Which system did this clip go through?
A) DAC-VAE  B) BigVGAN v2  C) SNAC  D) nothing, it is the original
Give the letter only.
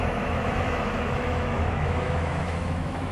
A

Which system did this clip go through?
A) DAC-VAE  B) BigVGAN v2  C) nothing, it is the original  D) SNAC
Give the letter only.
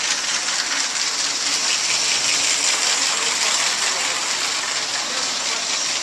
C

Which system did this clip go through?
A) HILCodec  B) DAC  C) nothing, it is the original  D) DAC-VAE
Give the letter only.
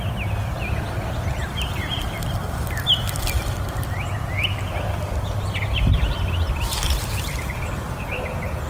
C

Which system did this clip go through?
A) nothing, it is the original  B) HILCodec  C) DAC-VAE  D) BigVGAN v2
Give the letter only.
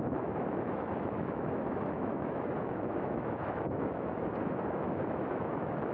C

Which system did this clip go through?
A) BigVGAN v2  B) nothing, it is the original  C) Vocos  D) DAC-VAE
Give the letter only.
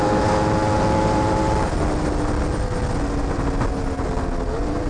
B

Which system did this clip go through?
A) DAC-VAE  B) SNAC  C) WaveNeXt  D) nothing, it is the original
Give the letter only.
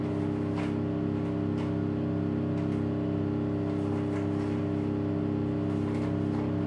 D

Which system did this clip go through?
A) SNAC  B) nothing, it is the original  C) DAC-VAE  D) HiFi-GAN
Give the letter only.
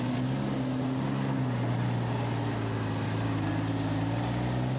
B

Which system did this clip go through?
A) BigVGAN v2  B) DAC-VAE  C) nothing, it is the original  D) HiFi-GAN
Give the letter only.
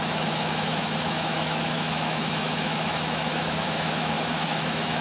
B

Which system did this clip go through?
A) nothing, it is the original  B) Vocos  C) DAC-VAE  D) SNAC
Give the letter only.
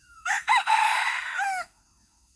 C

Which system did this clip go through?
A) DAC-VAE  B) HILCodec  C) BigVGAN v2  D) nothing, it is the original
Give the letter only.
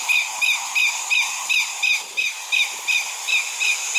D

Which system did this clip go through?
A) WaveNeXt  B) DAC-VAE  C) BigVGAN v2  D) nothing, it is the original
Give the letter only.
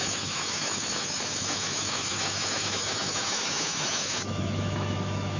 B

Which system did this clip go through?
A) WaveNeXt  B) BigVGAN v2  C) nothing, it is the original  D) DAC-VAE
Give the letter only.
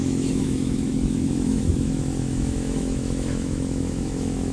D